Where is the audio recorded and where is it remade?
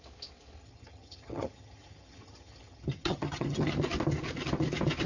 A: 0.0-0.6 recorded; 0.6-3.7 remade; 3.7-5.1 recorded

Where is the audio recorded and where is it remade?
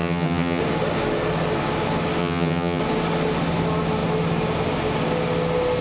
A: 0.0-0.6 remade; 0.6-2.2 recorded; 2.2-2.8 remade; 2.8-5.8 recorded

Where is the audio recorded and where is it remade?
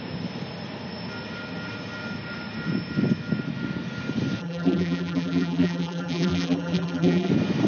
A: 0.0-4.4 recorded; 4.4-7.3 remade; 7.3-7.7 recorded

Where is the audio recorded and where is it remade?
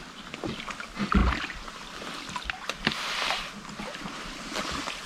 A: 0.0-5.1 recorded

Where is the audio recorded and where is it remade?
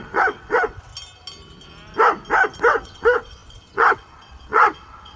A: 0.0-0.9 remade; 0.9-2.6 recorded; 2.6-5.2 remade